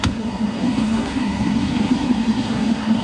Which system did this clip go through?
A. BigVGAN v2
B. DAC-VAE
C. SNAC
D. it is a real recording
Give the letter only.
C